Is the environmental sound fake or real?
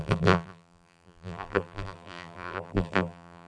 fake